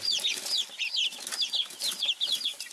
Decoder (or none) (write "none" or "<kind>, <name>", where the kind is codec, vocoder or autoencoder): none